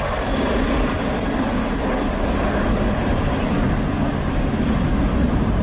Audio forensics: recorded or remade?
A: recorded